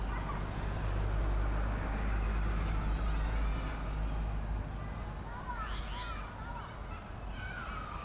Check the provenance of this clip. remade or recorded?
recorded